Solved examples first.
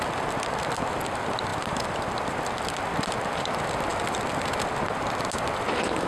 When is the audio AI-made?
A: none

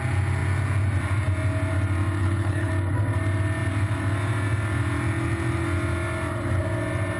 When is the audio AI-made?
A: 2.2-2.7 (codec, HILCodec)

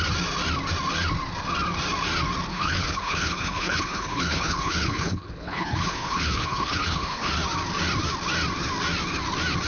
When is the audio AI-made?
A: 2.5-7.3 (codec, HILCodec)

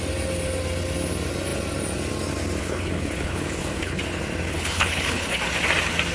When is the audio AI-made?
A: 2.6-4.0 (codec, HILCodec); 4.5-5.4

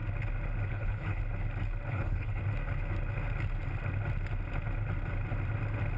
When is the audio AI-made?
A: 0.7-1.2 (codec, HILCodec); 1.9-2.4

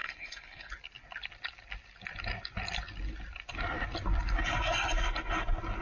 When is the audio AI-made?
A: 0.0-0.7 (codec, HILCodec)

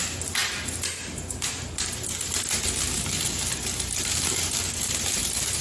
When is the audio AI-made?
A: none